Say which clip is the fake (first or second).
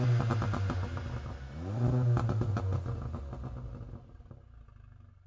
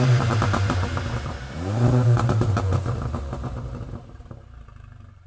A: second